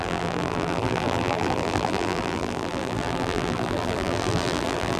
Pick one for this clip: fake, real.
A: fake